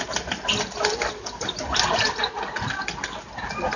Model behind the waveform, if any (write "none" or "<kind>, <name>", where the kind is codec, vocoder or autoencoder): none